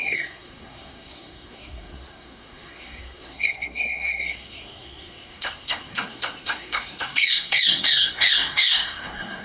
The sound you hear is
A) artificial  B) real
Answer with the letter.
A